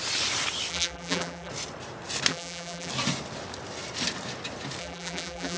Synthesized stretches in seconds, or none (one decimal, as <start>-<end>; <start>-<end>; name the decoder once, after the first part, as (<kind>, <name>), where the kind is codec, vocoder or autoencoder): 0.7-1.5 (vocoder, BigVGAN v2); 2.3-2.9; 4.8-5.6